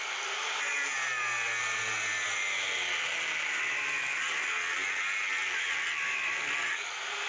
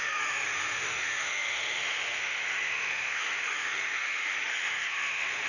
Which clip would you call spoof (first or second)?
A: second